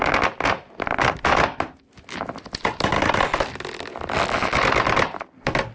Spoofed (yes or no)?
no